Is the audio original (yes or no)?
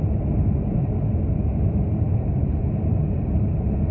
no